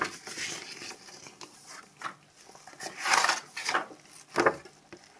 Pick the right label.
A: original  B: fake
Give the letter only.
A